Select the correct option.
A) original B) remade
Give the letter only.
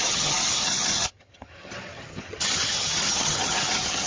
B